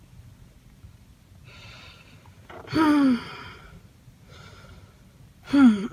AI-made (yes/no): no